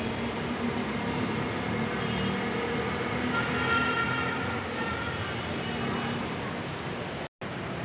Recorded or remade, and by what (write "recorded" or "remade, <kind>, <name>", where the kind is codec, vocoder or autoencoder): recorded